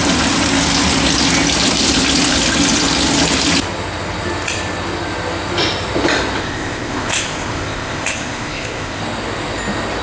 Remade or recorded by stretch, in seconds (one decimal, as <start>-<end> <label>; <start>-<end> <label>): 0.0-6.4 recorded; 6.4-9.0 remade; 9.0-10.0 recorded

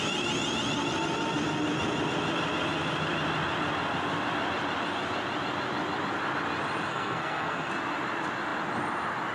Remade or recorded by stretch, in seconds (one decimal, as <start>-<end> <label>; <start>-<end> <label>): 0.0-6.9 recorded; 6.9-7.7 remade; 7.7-9.3 recorded

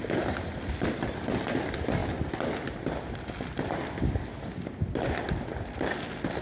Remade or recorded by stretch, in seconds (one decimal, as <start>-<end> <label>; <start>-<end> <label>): 0.0-6.4 recorded

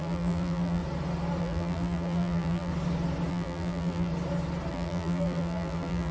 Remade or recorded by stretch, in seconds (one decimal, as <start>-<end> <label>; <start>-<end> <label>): 0.0-0.8 remade; 0.8-1.4 recorded; 1.4-2.7 remade; 2.7-3.3 recorded; 3.3-4.1 remade; 4.1-4.7 recorded; 4.7-6.1 remade

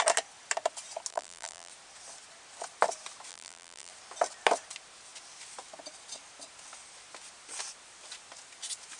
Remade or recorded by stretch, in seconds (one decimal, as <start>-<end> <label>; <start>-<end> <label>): 0.0-1.1 recorded; 1.1-1.7 remade; 1.7-3.3 recorded; 3.3-3.9 remade; 3.9-9.0 recorded

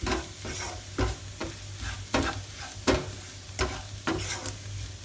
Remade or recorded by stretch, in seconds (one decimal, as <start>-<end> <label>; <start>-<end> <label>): 0.0-5.0 recorded